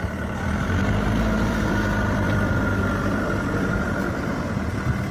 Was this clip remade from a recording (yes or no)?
yes